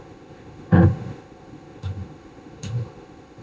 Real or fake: fake